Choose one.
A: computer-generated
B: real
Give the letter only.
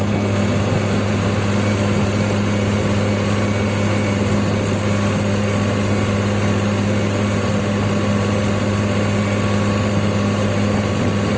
B